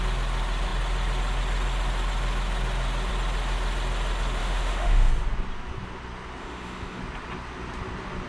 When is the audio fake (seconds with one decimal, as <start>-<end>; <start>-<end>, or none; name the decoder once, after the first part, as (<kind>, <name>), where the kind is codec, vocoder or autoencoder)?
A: 4.4-5.1 (autoencoder, DAC-VAE); 6.4-7.0

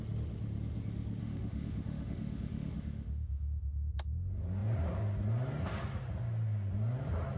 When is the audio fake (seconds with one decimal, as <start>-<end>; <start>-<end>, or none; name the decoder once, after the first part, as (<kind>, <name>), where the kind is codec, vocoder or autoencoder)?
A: 1.2-3.9 (autoencoder, DAC-VAE)

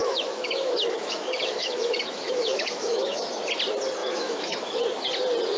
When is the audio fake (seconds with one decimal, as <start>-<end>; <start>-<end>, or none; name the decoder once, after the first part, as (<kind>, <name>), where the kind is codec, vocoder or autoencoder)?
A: 0.0-3.4 (autoencoder, DAC-VAE); 4.0-4.8